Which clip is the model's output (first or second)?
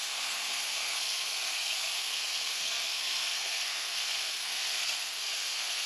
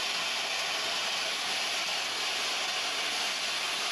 first